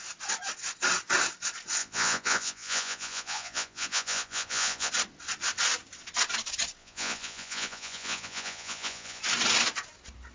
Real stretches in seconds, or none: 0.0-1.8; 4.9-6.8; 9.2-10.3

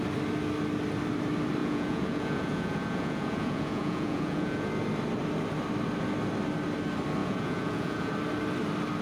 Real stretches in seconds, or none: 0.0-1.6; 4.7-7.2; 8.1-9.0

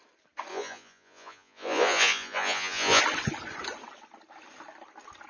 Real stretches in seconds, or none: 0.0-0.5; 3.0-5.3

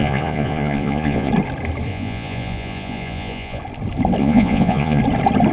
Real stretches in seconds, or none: 1.3-1.9; 3.6-4.2; 5.0-5.5